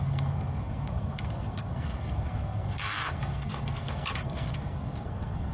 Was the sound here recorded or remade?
remade